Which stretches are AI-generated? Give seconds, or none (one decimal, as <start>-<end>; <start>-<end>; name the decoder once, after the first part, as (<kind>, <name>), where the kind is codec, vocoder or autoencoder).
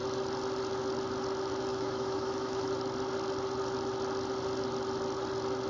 1.7-2.7 (autoencoder, DAC-VAE)